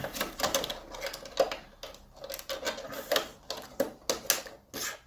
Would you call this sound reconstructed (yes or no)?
no